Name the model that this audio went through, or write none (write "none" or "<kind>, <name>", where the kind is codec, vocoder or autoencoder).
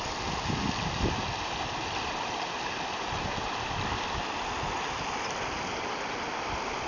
none